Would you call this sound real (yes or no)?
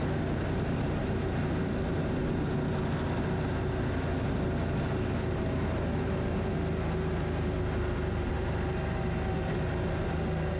yes